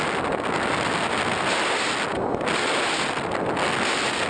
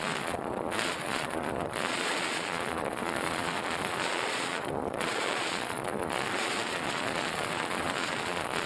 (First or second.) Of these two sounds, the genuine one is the first